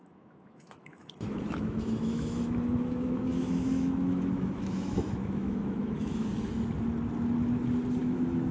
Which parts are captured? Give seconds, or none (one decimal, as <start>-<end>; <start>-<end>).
6.3-8.0